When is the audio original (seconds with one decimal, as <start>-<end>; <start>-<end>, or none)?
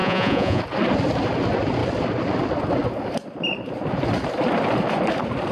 0.6-5.5